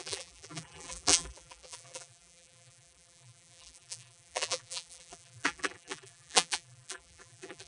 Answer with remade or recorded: remade